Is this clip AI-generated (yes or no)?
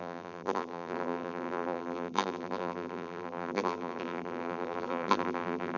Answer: yes